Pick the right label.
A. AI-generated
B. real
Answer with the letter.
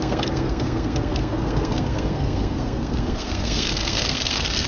A